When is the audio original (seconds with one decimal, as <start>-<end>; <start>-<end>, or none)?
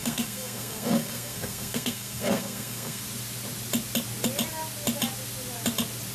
3.0-6.1